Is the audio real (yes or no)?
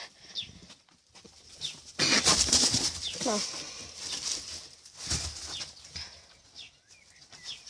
yes